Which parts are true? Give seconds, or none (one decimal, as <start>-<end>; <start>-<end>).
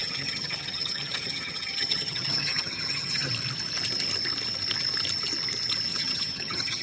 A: 3.3-5.9